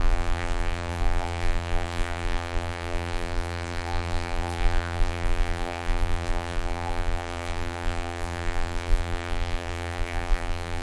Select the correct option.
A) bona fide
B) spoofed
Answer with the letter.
B